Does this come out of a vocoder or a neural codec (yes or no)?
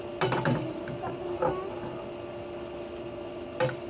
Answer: no